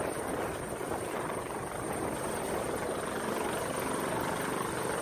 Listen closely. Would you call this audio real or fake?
real